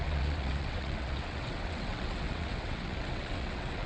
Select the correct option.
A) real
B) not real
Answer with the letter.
B